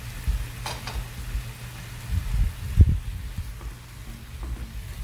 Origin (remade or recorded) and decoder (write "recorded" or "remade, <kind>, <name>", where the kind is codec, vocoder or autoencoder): recorded